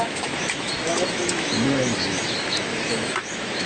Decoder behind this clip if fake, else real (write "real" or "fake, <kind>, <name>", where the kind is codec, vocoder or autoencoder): fake, autoencoder, DAC-VAE